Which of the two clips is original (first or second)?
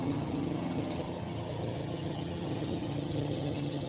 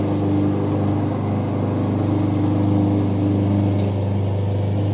second